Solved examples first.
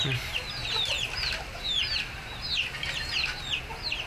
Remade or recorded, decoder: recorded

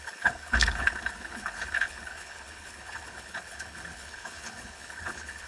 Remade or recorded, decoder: remade, codec, HILCodec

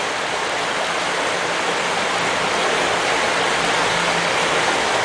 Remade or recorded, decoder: recorded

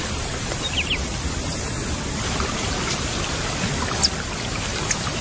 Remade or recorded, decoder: recorded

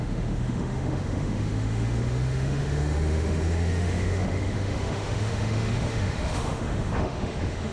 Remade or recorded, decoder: remade, autoencoder, DAC-VAE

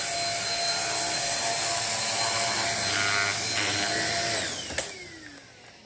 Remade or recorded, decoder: recorded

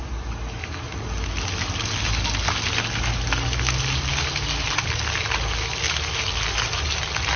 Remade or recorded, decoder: recorded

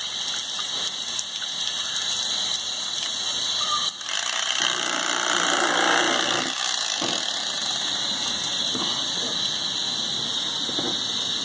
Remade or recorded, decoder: recorded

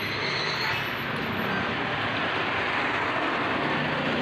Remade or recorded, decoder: recorded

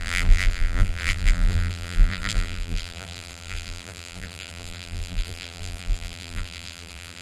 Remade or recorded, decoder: remade, vocoder, BigVGAN v2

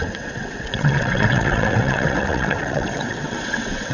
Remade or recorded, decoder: remade, vocoder, WaveNeXt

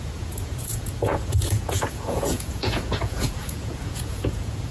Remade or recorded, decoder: remade, vocoder, Vocos